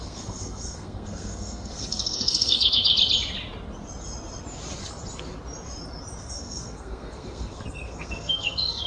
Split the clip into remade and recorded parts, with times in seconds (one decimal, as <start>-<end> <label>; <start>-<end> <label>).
0.0-2.9 remade; 2.9-6.2 recorded; 6.2-8.9 remade